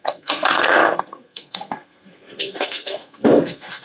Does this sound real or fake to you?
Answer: fake